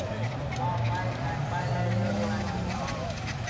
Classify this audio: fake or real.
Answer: real